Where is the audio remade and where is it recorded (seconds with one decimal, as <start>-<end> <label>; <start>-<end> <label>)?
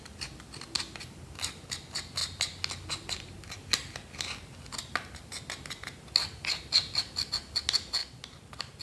0.0-8.8 recorded